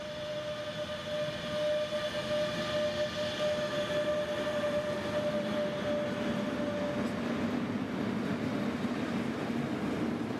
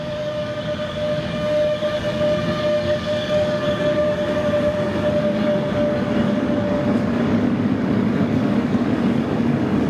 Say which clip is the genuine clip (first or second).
first